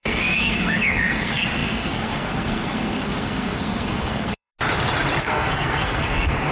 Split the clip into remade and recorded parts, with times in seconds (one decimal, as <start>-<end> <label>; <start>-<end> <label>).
0.0-4.5 remade; 4.5-5.2 recorded; 5.2-6.5 remade